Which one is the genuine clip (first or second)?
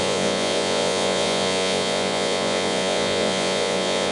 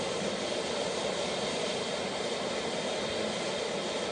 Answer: second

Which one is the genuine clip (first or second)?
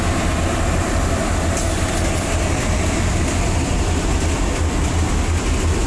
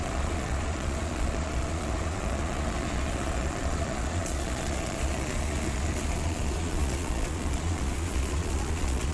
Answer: first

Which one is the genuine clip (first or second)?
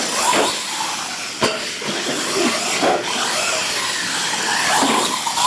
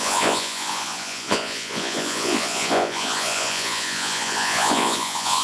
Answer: first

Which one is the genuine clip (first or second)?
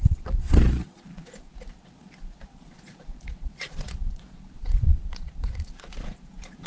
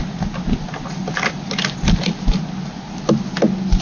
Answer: second